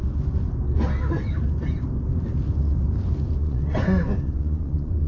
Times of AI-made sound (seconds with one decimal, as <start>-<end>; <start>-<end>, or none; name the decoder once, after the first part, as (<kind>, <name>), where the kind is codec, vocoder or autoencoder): 3.4-5.1 (vocoder, Vocos)